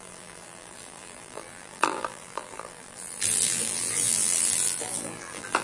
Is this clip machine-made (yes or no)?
yes